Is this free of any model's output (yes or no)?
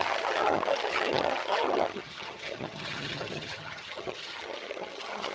no